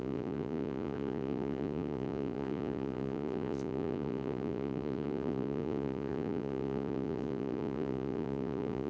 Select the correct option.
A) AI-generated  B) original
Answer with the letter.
A